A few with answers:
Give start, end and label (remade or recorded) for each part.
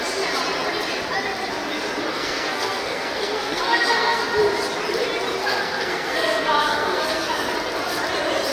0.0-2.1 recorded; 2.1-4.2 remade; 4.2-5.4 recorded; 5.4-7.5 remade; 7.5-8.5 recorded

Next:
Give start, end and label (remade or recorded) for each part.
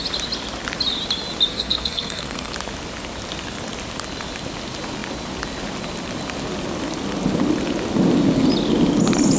0.0-1.5 recorded; 1.5-2.5 remade; 2.5-9.4 recorded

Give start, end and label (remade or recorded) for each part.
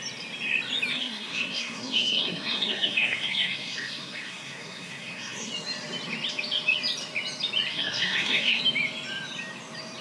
0.0-0.9 recorded; 0.9-5.5 remade; 5.5-7.7 recorded; 7.7-8.6 remade; 8.6-10.0 recorded